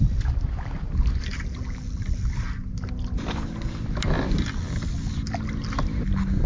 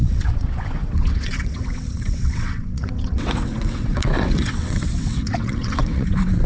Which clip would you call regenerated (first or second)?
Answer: second